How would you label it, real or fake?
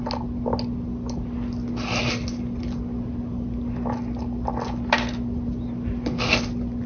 real